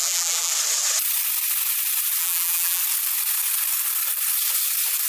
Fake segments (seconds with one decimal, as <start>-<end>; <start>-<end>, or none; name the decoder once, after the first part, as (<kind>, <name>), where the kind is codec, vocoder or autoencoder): 0.0-0.5 (vocoder, BigVGAN v2); 2.2-2.8